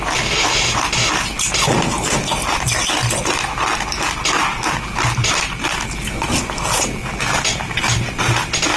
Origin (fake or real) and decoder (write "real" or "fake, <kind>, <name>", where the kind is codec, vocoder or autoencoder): real